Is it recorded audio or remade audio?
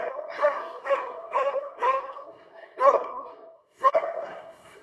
remade